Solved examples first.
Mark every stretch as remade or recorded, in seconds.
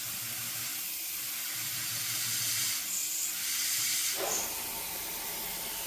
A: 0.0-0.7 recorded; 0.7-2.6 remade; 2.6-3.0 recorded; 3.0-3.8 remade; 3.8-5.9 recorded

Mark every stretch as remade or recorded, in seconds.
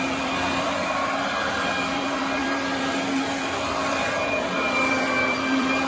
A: 0.0-5.9 remade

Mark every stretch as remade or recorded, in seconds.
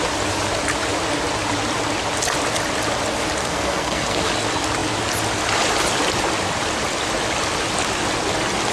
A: 0.0-3.4 recorded; 3.4-4.3 remade; 4.3-8.7 recorded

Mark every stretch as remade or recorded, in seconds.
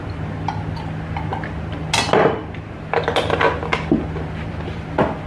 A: 0.0-5.3 recorded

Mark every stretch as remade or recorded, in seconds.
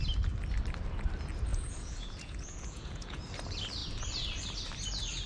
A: 0.0-1.5 recorded; 1.5-3.2 remade; 3.2-5.3 recorded